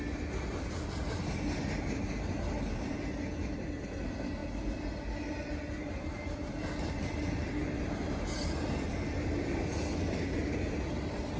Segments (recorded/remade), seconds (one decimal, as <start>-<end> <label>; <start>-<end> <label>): 0.0-11.4 recorded

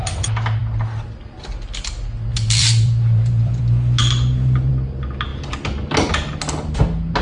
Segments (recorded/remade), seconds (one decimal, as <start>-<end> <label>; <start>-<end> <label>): 0.0-2.3 recorded; 2.3-3.6 remade; 3.6-4.0 recorded; 4.0-4.7 remade; 4.7-7.2 recorded

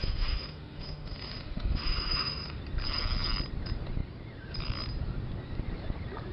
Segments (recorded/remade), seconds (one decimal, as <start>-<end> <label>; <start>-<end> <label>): 0.0-2.6 remade; 2.6-6.3 recorded